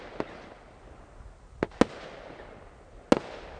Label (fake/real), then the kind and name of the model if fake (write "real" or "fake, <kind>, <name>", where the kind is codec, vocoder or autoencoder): real